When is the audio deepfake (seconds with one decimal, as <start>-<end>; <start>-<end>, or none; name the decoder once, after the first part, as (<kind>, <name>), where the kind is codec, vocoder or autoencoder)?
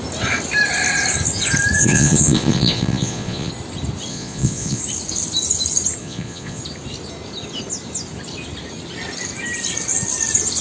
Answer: 1.8-3.5 (vocoder, Vocos); 4.1-4.8; 6.0-6.6